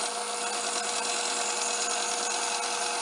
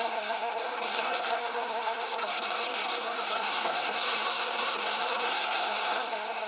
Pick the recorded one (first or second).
first